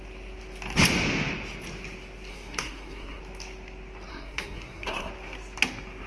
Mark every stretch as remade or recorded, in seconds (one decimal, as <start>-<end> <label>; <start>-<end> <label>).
0.0-2.3 recorded; 2.3-3.2 remade; 3.2-4.1 recorded; 4.1-5.1 remade; 5.1-6.1 recorded

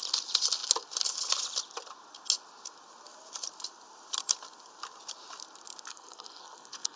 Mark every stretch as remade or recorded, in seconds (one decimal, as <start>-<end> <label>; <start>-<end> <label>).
0.0-5.9 recorded; 5.9-7.0 remade

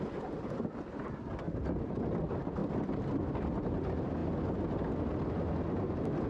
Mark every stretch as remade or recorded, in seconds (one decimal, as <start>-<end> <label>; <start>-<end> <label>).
0.0-6.3 recorded

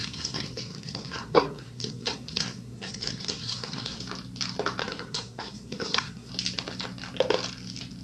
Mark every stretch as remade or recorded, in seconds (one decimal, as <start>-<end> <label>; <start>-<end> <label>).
0.0-4.0 remade; 4.0-4.8 recorded; 4.8-6.3 remade; 6.3-8.0 recorded

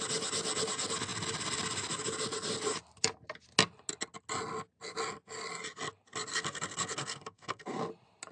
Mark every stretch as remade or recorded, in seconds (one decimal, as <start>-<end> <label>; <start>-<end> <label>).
0.0-6.3 recorded; 6.3-7.8 remade; 7.8-8.3 recorded

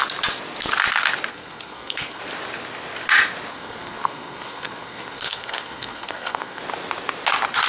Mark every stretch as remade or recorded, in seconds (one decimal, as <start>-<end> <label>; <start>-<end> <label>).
0.0-1.3 recorded; 1.3-2.2 remade; 2.2-3.5 recorded; 3.5-6.6 remade; 6.6-7.7 recorded